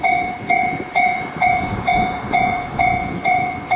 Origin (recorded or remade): remade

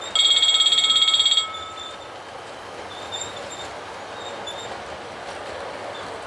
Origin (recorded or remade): recorded